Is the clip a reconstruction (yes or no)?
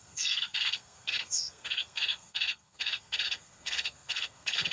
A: yes